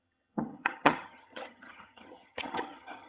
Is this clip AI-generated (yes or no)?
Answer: yes